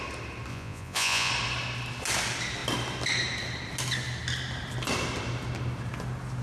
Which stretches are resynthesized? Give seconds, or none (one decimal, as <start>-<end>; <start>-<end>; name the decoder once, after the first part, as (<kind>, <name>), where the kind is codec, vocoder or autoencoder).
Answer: 0.5-1.3 (vocoder, Vocos)